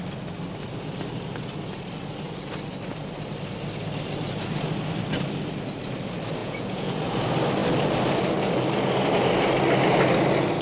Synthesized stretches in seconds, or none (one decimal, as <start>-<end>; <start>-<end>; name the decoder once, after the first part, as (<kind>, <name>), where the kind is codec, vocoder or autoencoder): 6.4-7.0 (vocoder, Vocos)